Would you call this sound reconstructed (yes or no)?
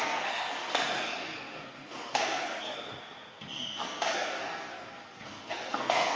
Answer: yes